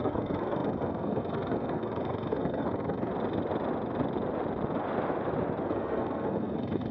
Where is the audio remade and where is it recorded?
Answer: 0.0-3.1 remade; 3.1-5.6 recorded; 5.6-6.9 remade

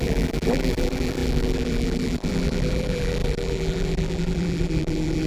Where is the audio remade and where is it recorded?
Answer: 0.0-5.3 remade